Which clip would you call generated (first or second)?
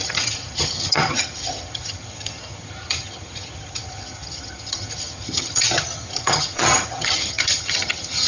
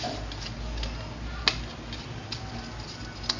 first